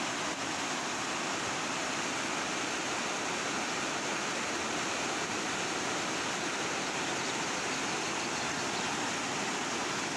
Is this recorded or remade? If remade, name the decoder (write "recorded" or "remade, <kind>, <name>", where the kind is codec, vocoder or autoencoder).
recorded